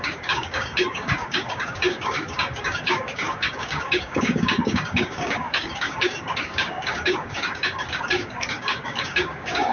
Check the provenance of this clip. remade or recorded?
remade